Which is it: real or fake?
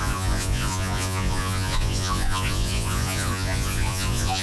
fake